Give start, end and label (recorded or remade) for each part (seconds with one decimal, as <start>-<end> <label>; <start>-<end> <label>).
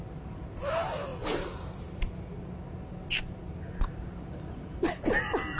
0.0-5.6 recorded